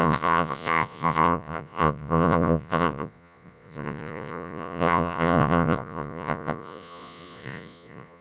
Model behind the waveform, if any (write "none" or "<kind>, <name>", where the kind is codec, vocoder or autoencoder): vocoder, Vocos